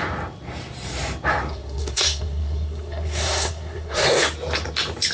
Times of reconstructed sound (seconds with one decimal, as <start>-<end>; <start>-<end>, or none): 1.5-4.2